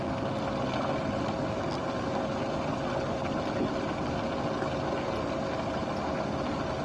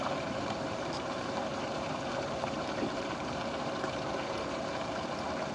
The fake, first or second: second